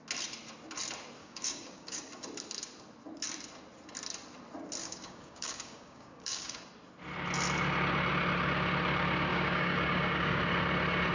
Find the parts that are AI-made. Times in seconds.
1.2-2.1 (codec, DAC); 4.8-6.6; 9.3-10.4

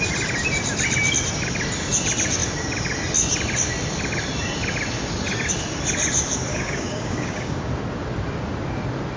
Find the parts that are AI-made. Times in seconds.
6.5-7.6 (codec, DAC)

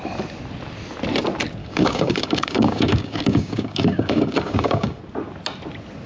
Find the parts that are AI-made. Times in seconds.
1.6-5.0 (codec, DAC)

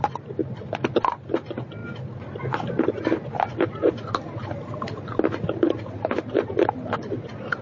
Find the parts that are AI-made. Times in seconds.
none